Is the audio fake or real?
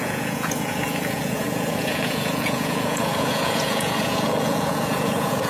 fake